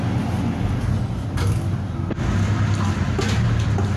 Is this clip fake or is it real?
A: real